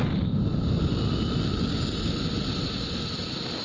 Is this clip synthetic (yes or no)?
no